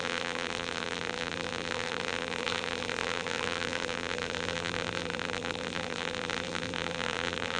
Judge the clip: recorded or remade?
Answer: remade